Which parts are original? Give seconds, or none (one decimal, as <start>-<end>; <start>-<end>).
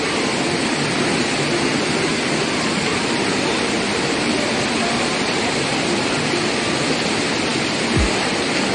0.0-2.9; 6.5-8.7